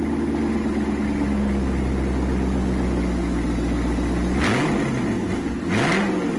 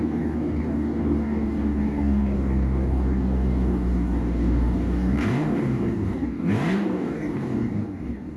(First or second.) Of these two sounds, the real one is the first